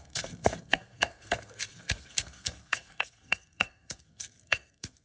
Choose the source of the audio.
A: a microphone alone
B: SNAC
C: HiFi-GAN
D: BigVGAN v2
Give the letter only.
B